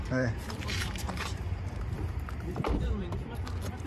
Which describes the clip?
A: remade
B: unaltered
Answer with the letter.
A